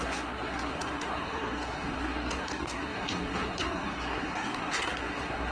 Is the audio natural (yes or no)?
no